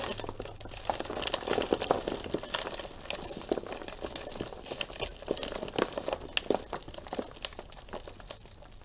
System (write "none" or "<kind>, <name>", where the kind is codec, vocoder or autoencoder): none